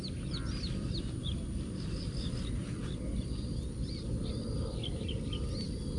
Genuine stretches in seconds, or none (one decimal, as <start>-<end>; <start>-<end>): 0.0-6.0